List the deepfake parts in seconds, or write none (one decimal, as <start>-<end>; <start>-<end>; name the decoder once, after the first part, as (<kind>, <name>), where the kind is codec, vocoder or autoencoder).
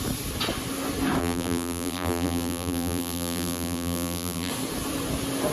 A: 1.2-4.5 (vocoder, BigVGAN v2)